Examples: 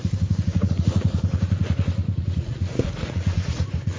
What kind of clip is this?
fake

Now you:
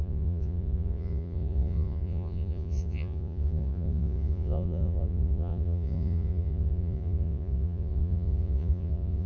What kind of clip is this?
fake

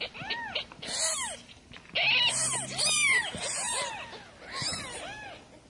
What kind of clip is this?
real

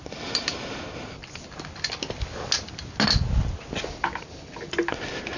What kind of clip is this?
real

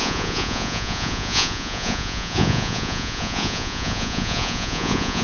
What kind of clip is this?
fake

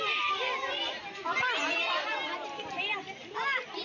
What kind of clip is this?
real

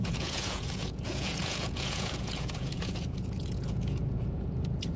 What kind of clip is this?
fake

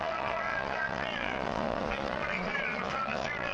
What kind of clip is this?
fake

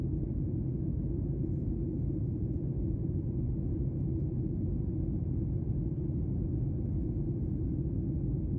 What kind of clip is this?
real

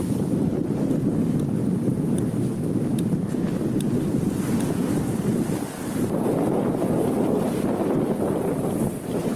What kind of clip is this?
real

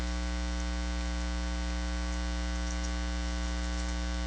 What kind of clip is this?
real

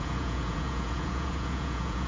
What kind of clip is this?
fake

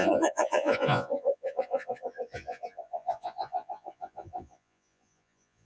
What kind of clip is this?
fake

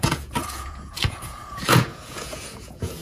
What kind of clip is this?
fake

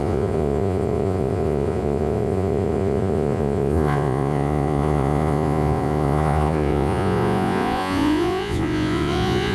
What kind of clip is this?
fake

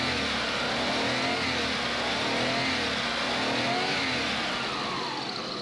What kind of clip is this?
real